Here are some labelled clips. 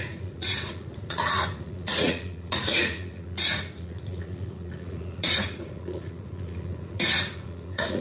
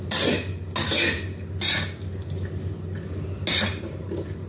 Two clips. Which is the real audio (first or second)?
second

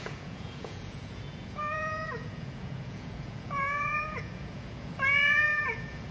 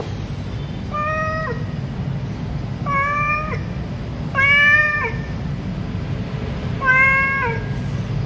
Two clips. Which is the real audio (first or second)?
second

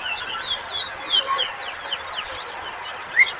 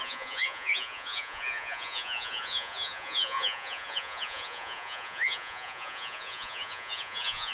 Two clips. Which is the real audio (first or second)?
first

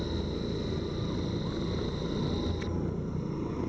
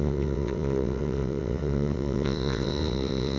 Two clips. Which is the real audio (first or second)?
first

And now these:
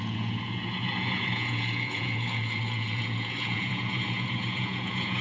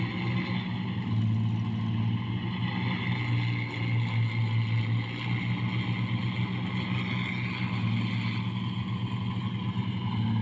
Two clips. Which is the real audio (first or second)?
second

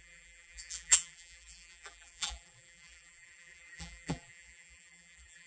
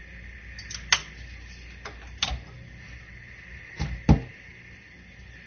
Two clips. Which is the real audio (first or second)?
second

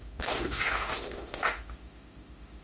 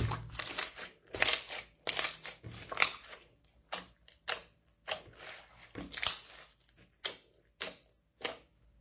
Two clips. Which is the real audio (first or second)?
second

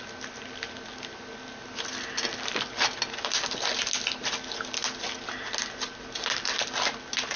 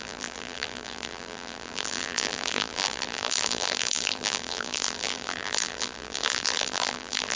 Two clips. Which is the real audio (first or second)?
first